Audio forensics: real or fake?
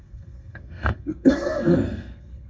fake